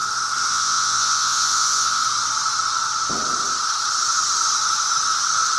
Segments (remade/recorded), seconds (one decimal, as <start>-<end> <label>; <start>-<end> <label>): 0.0-0.5 recorded; 0.5-2.0 remade; 2.0-5.6 recorded